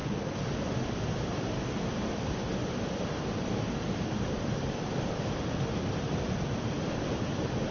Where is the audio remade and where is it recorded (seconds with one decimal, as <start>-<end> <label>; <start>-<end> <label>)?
0.0-7.7 recorded